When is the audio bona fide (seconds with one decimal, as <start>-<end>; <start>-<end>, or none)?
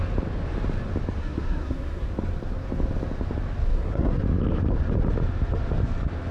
0.0-1.2; 2.1-3.7; 4.2-6.3